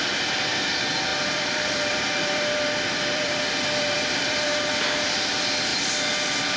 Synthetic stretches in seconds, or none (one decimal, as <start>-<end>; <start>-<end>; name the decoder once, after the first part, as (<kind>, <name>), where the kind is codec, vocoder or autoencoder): 1.1-3.4 (vocoder, BigVGAN v2); 3.8-4.7